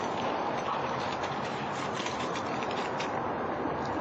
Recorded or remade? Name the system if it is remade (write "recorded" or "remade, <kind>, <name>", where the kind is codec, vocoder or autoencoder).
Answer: recorded